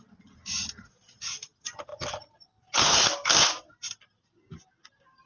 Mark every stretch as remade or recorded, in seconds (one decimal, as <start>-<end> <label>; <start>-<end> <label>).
0.0-5.3 recorded